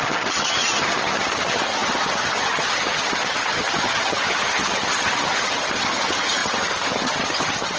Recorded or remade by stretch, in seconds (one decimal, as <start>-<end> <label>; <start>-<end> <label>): 0.0-7.8 remade

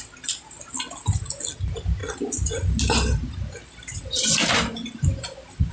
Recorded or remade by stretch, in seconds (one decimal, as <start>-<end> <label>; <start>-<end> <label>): 0.0-5.7 recorded

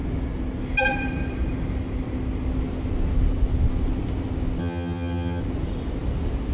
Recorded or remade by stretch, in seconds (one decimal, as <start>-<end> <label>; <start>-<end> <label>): 0.0-4.6 recorded; 4.6-5.4 remade; 5.4-6.5 recorded

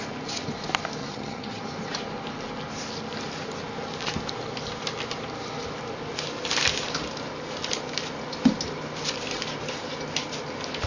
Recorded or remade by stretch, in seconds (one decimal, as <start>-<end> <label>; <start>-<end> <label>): 0.0-1.0 recorded; 1.0-1.6 remade; 1.6-10.9 recorded